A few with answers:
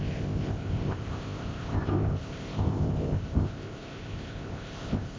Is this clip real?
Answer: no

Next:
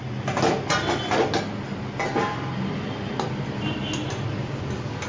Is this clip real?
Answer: yes